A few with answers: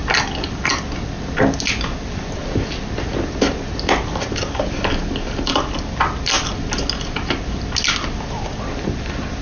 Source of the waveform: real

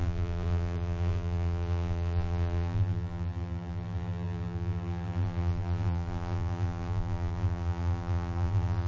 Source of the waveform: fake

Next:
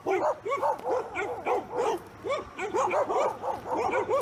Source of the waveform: real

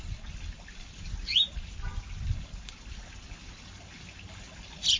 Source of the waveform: real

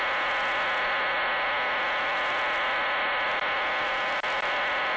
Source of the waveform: real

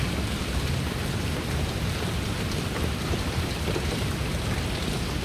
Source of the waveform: fake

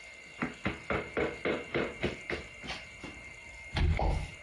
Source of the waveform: fake